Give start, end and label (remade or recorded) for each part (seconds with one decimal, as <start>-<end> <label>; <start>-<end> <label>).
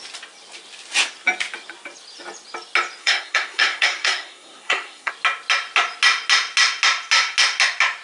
0.0-3.0 recorded; 3.0-5.1 remade; 5.1-8.0 recorded